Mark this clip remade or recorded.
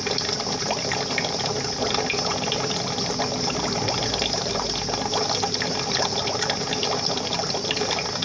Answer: recorded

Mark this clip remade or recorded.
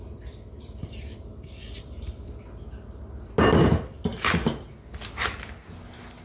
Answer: recorded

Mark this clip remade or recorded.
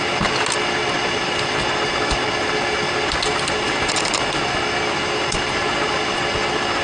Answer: recorded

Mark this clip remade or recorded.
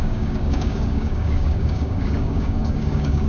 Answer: remade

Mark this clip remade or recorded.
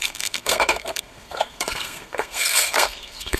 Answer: remade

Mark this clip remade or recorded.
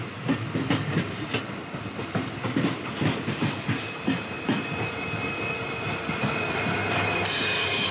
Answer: recorded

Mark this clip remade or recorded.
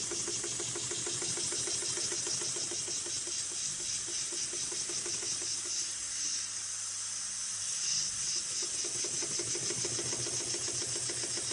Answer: recorded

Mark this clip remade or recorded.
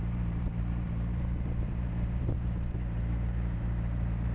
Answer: remade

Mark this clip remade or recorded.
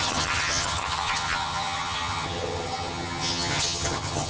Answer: remade